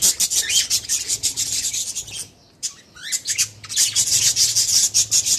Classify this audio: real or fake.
real